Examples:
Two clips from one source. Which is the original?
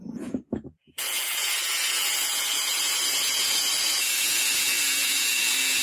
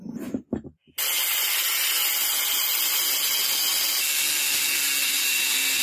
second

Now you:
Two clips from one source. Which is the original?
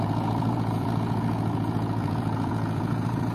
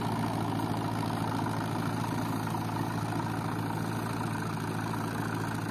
second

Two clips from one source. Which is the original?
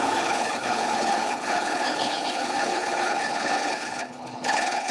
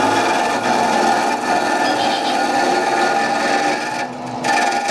second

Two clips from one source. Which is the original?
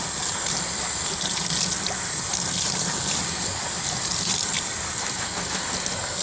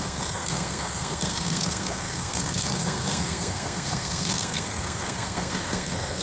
first